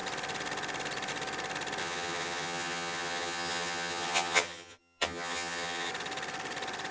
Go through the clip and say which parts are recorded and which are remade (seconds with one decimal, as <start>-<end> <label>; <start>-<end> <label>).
0.0-1.8 recorded; 1.8-5.9 remade; 5.9-6.9 recorded